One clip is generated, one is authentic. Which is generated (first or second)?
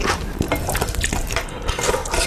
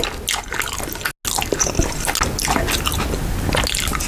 first